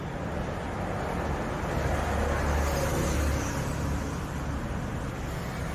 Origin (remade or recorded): recorded